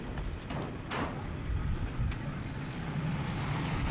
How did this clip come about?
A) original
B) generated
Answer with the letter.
A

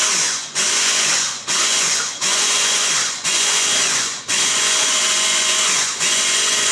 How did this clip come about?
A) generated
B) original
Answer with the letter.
A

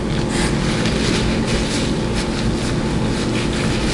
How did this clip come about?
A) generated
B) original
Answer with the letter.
B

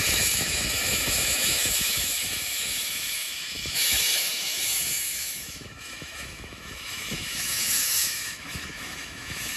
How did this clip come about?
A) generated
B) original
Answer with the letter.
A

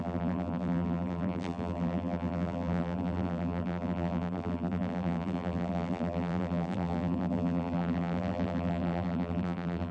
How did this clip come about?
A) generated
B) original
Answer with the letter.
A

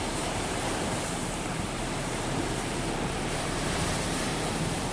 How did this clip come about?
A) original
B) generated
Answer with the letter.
B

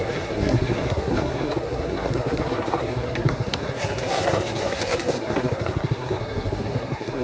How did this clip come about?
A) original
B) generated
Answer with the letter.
B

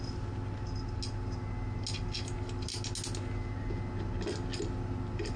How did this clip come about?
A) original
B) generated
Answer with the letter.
A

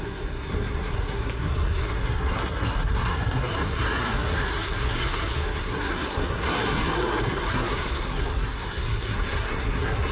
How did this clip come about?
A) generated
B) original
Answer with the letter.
A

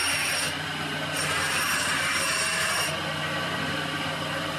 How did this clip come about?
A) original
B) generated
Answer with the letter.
A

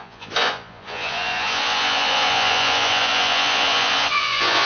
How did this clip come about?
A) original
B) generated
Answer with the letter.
B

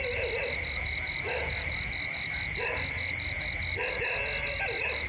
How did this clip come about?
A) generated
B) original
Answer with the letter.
B